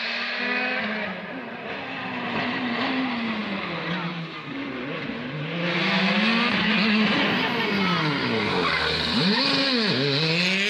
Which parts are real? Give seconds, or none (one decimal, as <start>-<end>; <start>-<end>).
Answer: 0.0-10.7

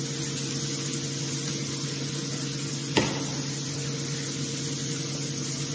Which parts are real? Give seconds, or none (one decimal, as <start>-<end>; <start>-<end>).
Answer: 0.0-5.7